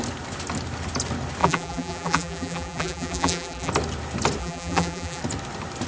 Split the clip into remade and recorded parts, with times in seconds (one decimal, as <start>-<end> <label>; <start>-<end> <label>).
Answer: 0.0-1.4 recorded; 1.4-3.7 remade; 3.7-4.4 recorded; 4.4-5.2 remade; 5.2-5.9 recorded